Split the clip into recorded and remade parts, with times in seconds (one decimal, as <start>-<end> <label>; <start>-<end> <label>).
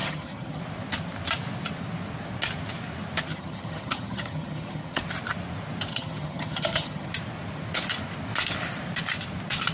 0.0-0.6 remade; 0.6-3.3 recorded; 3.3-5.0 remade; 5.0-5.9 recorded; 5.9-7.1 remade; 7.1-9.7 recorded